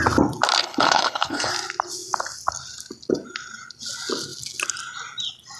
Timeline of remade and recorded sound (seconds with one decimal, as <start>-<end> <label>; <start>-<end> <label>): 0.0-0.6 recorded; 0.6-1.5 remade; 1.5-5.6 recorded